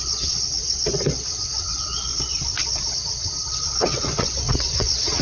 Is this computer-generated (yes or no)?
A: yes